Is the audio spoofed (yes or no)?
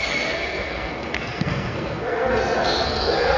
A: yes